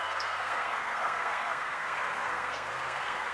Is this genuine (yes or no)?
no